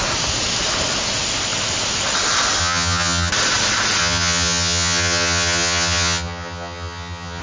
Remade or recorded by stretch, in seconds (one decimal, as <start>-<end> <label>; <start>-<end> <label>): 0.0-2.6 recorded; 2.6-3.3 remade; 3.3-4.0 recorded; 4.0-7.4 remade